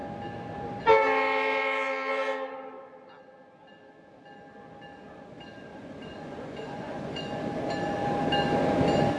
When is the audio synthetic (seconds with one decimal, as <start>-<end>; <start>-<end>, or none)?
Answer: 5.7-7.4